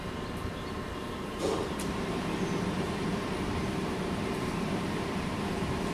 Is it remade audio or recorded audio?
remade